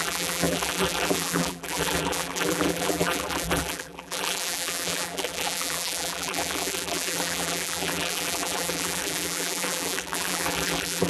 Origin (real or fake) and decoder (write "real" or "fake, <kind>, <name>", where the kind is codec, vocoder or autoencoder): fake, vocoder, BigVGAN v2